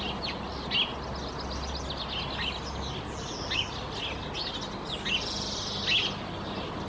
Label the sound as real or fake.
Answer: real